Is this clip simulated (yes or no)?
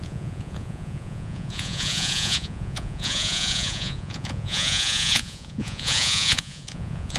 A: yes